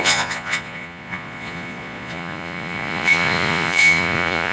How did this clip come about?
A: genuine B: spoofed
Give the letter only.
B